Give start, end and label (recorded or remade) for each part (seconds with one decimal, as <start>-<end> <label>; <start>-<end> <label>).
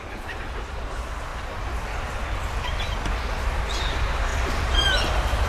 0.0-5.5 recorded